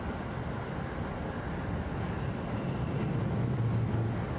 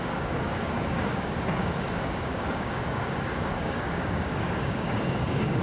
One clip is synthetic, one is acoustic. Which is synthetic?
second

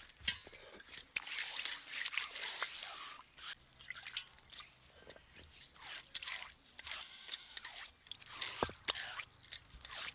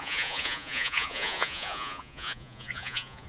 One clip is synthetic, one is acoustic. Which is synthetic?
second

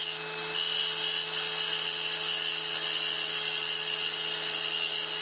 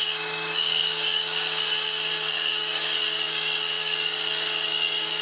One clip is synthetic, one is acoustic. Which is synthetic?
second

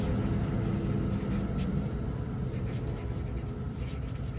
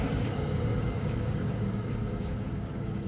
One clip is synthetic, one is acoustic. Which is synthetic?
second